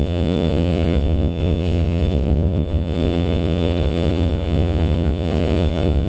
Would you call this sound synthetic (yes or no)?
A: yes